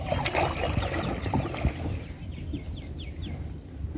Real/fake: fake